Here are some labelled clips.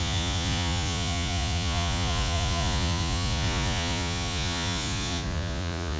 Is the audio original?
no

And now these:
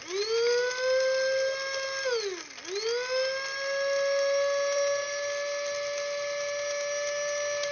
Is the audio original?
yes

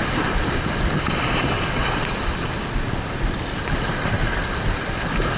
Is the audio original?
yes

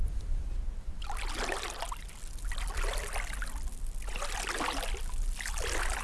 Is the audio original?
yes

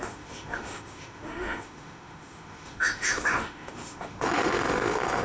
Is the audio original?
no